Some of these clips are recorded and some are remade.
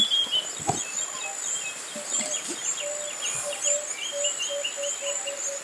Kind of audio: recorded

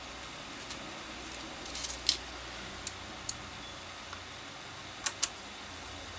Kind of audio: recorded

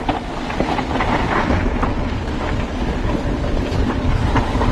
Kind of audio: recorded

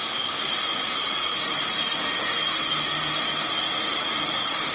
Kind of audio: recorded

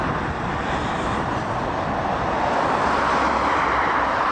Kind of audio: recorded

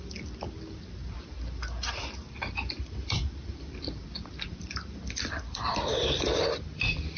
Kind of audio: remade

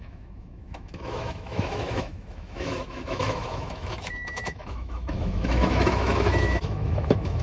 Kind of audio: remade